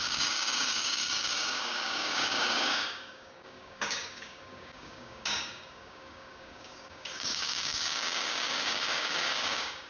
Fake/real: fake